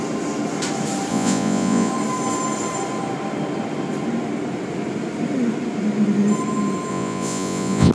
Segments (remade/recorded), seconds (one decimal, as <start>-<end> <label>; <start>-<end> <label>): 0.0-1.1 recorded; 1.1-1.9 remade; 1.9-6.9 recorded; 6.9-7.9 remade